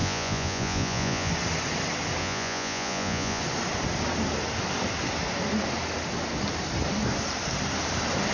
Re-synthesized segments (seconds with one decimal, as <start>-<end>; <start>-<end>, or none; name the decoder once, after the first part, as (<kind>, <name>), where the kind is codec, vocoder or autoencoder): 0.0-1.3 (vocoder, Vocos); 2.2-3.4